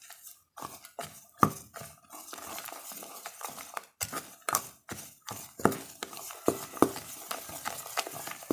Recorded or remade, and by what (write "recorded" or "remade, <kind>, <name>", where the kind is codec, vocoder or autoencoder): recorded